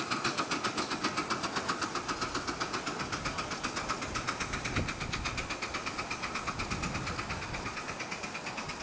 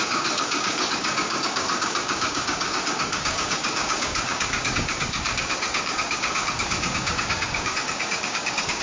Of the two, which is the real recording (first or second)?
first